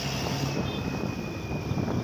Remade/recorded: recorded